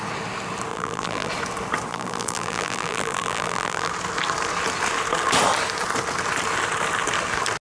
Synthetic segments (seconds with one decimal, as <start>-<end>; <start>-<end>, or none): 0.7-1.3; 1.9-3.9

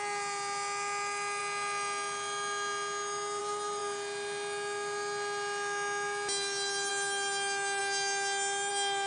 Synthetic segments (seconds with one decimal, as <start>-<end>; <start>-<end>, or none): none

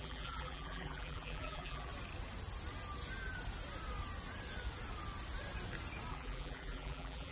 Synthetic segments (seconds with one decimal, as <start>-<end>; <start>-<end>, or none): 0.0-1.9; 6.1-7.3

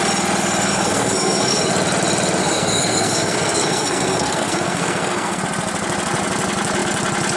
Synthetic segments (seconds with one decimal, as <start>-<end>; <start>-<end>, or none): 0.7-1.7; 2.4-5.4